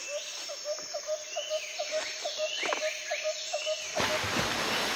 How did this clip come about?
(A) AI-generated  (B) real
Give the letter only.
B